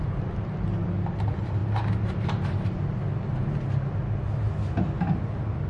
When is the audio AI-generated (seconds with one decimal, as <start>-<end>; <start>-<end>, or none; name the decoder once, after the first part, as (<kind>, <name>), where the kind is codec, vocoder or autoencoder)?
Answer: 0.0-1.6 (vocoder, BigVGAN v2); 5.0-5.7